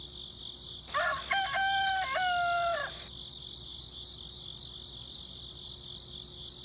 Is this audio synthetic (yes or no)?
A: no